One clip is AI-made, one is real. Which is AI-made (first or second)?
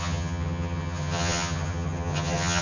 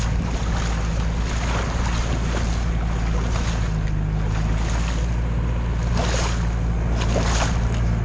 first